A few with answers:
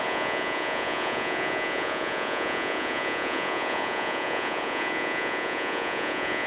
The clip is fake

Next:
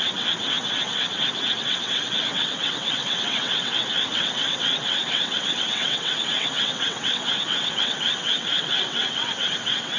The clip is fake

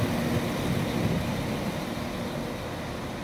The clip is real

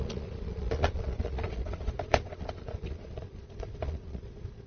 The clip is fake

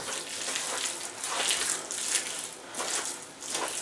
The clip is real